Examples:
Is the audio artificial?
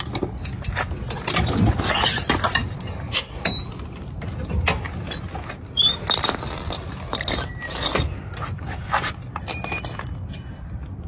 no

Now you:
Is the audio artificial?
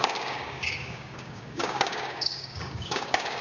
yes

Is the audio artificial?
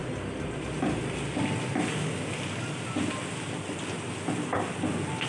no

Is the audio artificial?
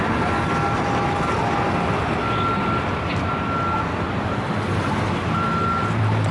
no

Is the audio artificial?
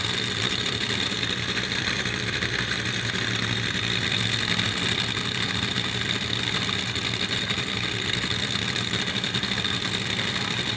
yes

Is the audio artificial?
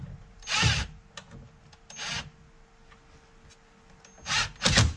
no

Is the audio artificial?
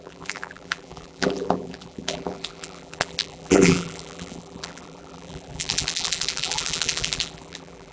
yes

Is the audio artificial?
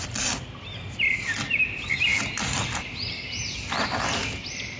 yes